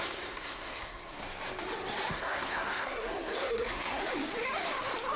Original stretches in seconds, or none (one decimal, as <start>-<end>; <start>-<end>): 1.2-2.1; 4.0-5.2